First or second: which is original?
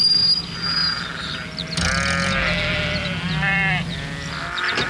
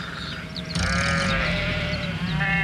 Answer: first